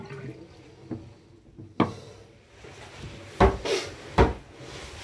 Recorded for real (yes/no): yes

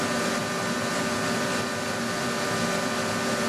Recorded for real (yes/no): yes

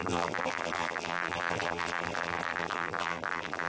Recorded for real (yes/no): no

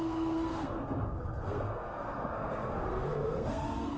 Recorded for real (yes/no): no